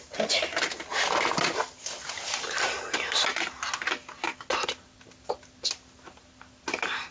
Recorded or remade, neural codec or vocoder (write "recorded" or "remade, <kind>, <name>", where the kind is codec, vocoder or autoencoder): recorded